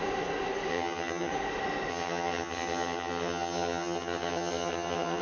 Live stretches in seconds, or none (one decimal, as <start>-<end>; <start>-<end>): 0.0-0.7; 1.3-1.9